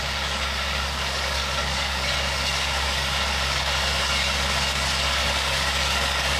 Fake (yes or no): yes